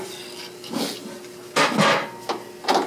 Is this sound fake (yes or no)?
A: no